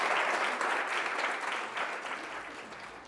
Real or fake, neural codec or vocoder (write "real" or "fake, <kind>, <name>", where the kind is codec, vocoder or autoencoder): real